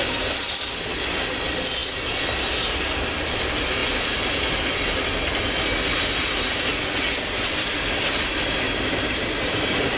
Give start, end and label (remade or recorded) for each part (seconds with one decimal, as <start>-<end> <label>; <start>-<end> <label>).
0.0-10.0 recorded